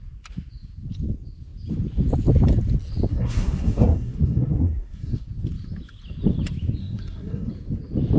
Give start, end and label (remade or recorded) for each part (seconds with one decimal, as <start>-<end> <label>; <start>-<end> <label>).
0.0-3.1 recorded; 3.1-5.3 remade; 5.3-6.8 recorded; 6.8-7.5 remade; 7.5-8.2 recorded